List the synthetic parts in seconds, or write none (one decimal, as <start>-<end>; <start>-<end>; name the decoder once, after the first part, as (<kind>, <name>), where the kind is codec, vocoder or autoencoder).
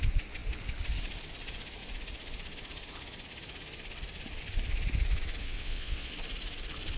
5.4-6.1 (vocoder, WaveNeXt)